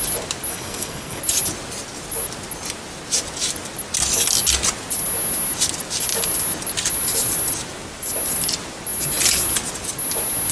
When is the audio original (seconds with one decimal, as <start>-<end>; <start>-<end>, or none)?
0.0-0.5; 1.2-10.5